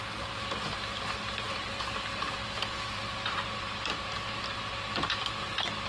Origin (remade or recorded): recorded